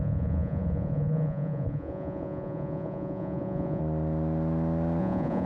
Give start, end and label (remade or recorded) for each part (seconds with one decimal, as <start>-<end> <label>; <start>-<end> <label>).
0.0-3.8 remade; 3.8-5.0 recorded; 5.0-5.5 remade